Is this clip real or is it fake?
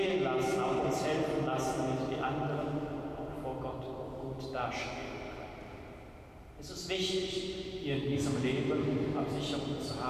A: real